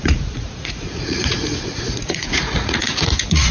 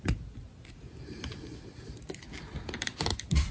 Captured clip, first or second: second